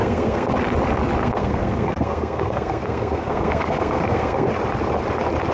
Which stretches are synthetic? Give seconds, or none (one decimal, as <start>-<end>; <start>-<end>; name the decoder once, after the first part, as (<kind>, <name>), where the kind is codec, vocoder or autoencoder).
0.0-0.5 (codec, SNAC); 1.2-4.5